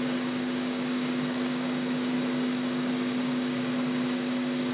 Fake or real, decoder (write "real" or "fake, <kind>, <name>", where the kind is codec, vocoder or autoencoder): fake, codec, DAC